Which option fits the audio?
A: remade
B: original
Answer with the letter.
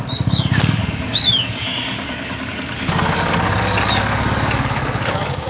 A